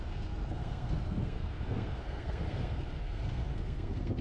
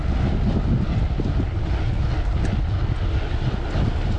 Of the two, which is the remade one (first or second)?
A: first